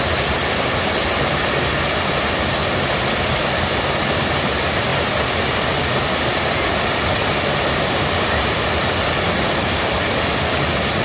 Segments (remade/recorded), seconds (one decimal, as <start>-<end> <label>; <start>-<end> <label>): 0.0-4.9 recorded; 4.9-9.5 remade; 9.5-11.0 recorded